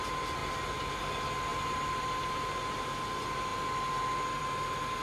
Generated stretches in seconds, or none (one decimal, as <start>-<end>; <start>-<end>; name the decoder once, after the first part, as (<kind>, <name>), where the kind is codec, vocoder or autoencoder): 1.5-2.8 (vocoder, BigVGAN v2)